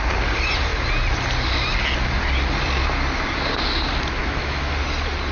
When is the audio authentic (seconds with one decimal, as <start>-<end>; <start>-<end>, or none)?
0.0-4.2; 4.7-5.3

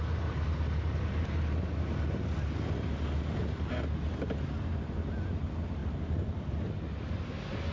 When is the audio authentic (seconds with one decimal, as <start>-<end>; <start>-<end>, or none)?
0.0-7.7

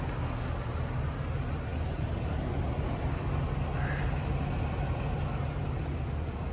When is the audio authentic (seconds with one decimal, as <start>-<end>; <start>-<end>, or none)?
0.0-6.5

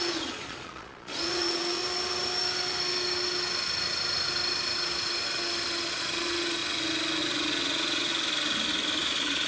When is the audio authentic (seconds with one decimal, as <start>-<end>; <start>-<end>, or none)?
1.8-5.9; 6.6-7.2; 8.1-9.0